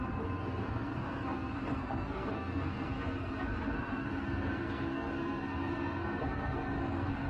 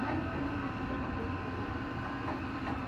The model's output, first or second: first